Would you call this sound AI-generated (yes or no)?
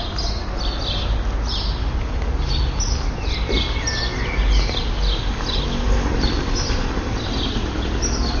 no